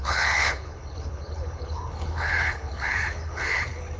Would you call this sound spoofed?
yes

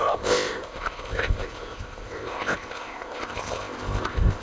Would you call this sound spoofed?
yes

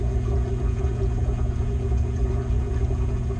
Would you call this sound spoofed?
yes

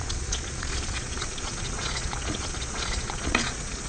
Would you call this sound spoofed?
yes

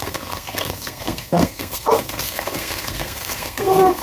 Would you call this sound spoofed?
yes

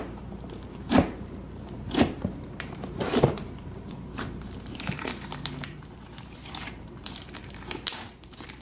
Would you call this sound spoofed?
yes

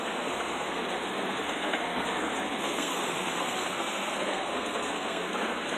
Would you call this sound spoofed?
yes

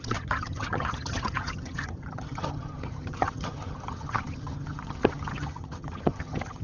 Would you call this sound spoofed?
yes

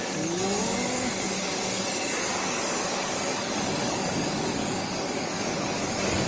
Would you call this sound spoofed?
yes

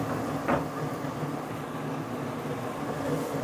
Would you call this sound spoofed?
no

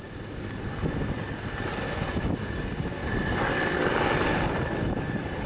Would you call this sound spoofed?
no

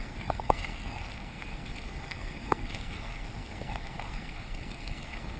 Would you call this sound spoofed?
yes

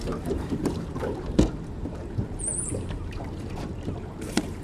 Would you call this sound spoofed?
yes